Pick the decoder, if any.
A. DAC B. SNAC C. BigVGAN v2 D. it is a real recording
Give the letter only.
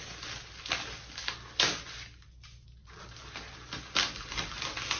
D